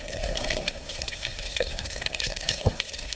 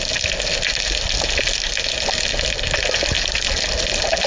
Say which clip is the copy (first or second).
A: first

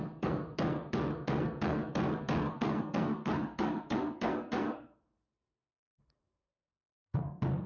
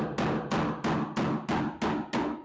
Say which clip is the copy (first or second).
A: first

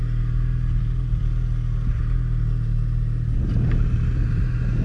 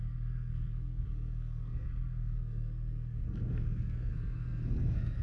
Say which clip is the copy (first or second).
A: second